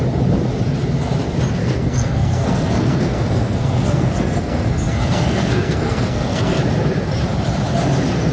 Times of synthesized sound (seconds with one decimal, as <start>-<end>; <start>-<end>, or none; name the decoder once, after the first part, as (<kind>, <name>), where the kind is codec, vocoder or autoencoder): 1.6-6.6 (codec, SNAC)